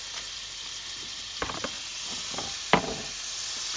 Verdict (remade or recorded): recorded